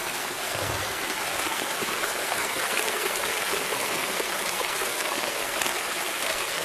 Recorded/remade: remade